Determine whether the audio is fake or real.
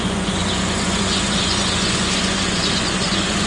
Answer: fake